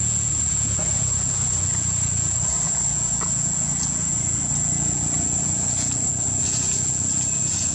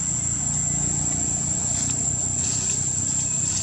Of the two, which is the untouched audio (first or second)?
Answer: second